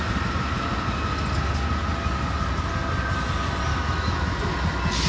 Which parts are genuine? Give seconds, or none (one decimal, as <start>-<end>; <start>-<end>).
0.0-3.7; 4.4-5.1